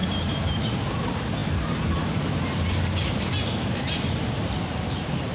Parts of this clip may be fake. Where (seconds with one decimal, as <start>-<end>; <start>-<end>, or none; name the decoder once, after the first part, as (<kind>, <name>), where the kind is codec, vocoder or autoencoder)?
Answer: 0.0-5.3 (vocoder, BigVGAN v2)